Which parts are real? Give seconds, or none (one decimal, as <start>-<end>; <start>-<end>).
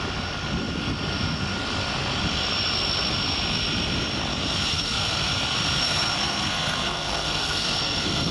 0.0-4.7; 5.3-5.8